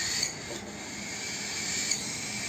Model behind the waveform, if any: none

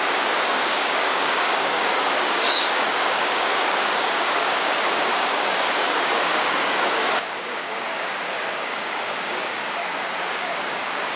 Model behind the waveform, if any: codec, DAC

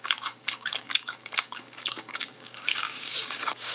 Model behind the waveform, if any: codec, DAC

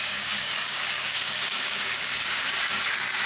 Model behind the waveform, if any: codec, DAC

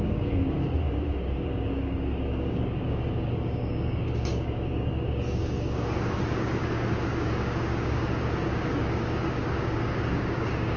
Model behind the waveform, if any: codec, DAC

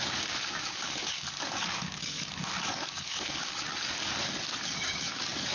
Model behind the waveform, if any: codec, DAC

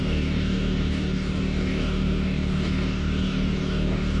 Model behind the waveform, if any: codec, DAC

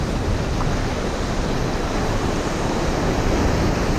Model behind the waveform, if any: none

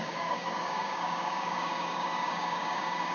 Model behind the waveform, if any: codec, DAC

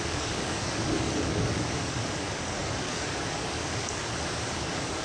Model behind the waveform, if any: codec, DAC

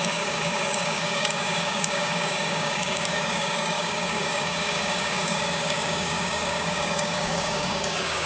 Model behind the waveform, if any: codec, DAC